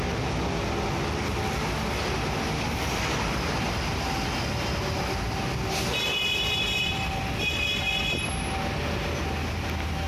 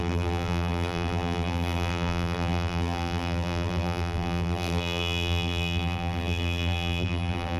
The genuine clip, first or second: first